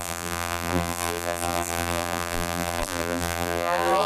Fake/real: fake